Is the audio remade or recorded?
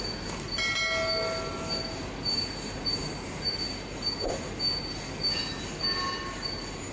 recorded